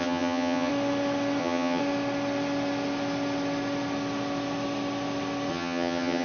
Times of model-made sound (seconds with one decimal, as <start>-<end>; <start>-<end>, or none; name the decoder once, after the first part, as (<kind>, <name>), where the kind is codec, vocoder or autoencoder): 0.0-0.7 (vocoder, HiFi-GAN); 1.4-1.8; 5.5-6.2